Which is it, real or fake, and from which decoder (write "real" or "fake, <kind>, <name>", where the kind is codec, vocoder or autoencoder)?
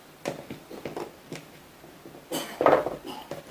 real